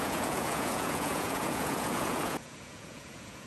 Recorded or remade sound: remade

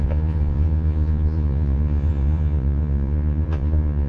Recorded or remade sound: remade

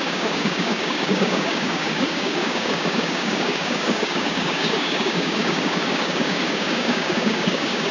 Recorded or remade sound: remade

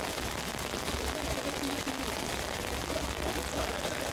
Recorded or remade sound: recorded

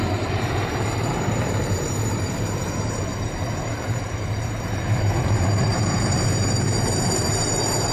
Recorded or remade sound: remade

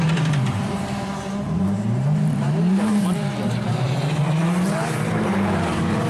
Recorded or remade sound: remade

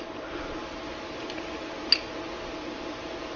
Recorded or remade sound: recorded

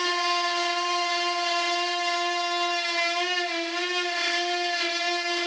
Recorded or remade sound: recorded